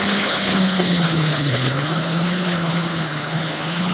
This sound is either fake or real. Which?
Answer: fake